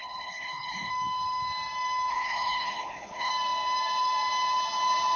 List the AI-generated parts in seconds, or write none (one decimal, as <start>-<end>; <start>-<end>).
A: 0.0-0.9; 2.1-3.3